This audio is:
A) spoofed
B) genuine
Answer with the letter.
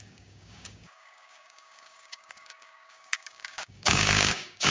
A